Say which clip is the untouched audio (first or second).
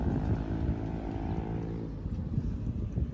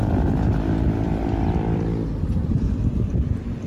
first